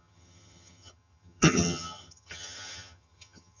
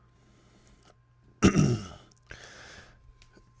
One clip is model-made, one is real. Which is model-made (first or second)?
first